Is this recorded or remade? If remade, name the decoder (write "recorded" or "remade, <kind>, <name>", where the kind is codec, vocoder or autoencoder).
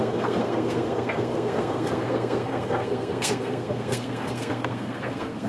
remade, codec, SNAC